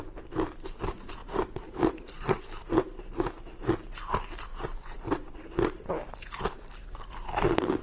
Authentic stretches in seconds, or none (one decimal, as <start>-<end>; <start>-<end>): 0.0-4.5; 5.9-7.8